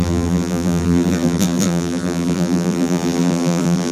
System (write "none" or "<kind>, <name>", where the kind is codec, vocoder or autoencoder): vocoder, BigVGAN v2